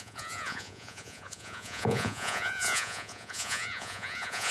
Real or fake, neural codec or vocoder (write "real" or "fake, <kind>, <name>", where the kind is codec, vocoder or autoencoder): fake, vocoder, Vocos